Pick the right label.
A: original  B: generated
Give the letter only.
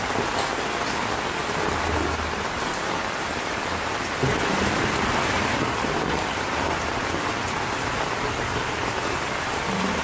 A